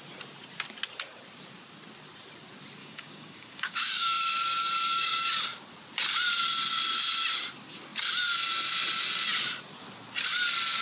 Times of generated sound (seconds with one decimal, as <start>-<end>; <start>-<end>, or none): 2.8-5.3